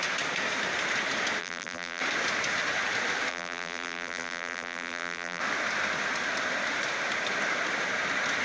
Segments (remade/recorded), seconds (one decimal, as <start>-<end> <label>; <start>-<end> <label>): 0.0-1.4 recorded; 1.4-2.0 remade; 2.0-3.3 recorded; 3.3-5.4 remade; 5.4-8.4 recorded